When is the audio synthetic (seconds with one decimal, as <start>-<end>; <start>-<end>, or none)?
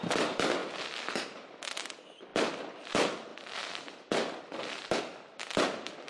none